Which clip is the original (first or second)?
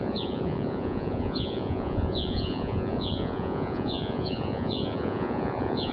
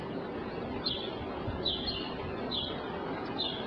second